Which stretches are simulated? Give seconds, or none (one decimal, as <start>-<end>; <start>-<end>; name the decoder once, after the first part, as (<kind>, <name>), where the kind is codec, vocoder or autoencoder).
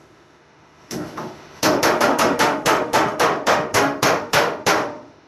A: 0.0-5.3 (autoencoder, DAC-VAE)